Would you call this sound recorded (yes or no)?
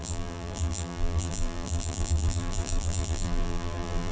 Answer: no